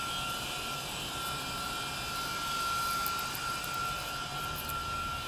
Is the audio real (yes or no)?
yes